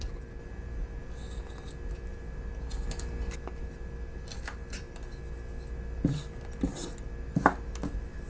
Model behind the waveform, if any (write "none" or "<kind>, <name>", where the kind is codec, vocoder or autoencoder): none